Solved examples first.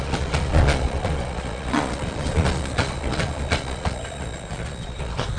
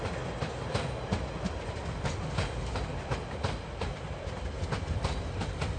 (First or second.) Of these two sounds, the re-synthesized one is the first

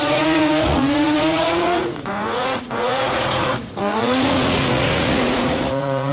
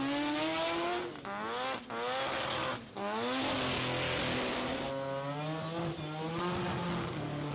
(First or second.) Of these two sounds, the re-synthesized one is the first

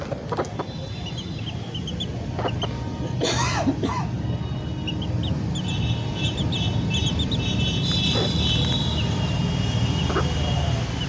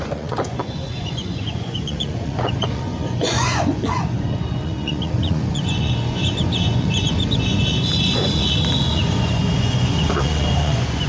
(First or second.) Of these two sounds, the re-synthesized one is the second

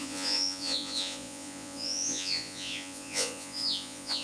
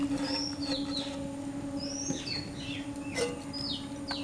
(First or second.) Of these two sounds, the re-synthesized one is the first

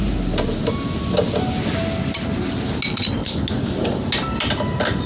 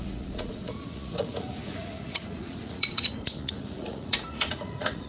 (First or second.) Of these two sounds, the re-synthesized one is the second